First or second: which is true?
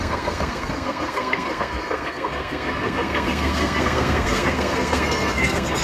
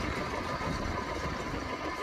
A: second